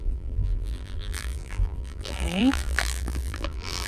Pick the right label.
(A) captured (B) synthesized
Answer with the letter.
B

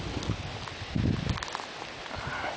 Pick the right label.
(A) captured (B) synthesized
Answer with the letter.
A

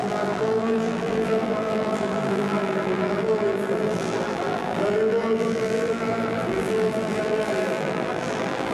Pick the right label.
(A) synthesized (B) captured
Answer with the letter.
A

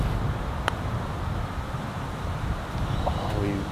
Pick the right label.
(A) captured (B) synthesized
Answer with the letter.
A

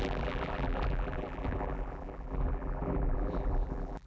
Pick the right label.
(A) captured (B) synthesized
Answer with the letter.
B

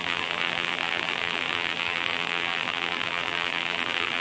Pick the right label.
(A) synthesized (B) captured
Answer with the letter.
A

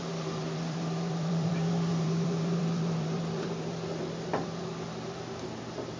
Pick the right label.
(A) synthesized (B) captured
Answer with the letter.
A